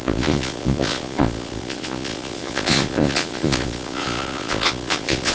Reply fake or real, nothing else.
fake